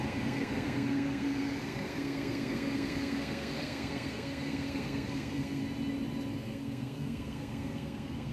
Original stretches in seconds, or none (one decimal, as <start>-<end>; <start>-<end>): 5.6-6.3